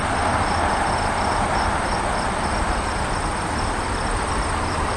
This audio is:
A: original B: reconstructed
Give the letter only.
A